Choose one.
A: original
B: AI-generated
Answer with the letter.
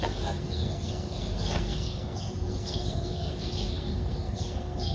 B